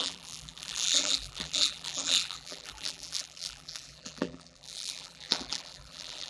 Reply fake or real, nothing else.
fake